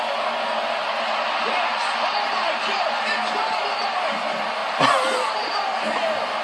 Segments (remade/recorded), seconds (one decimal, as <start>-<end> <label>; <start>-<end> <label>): 0.0-6.4 recorded